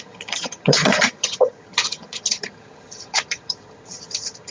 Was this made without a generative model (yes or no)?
no